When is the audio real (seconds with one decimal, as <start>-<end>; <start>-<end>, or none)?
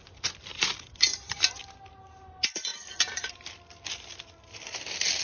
0.0-0.5; 1.6-5.2